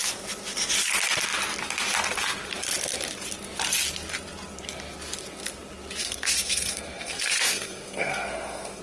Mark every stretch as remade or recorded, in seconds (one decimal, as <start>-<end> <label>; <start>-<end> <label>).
0.0-6.0 recorded; 6.0-8.8 remade